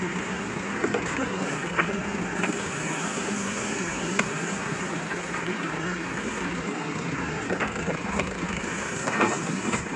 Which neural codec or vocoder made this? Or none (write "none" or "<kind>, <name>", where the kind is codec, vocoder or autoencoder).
codec, SNAC